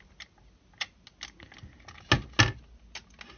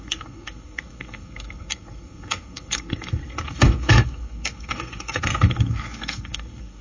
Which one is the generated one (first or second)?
second